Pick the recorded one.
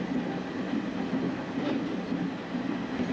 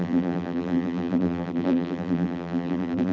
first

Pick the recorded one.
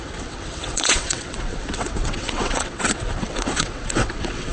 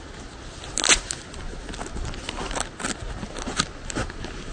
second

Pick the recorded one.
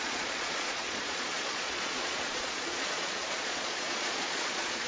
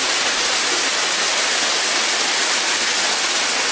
second